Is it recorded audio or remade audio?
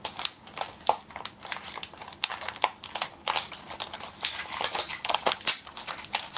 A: recorded